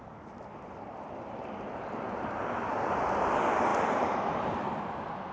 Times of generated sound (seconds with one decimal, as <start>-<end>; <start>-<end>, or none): none